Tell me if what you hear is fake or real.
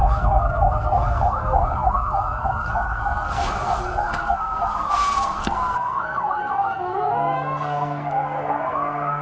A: fake